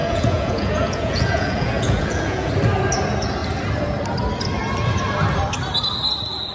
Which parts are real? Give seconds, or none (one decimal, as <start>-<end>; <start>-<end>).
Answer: 2.5-6.5